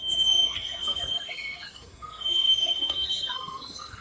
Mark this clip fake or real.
fake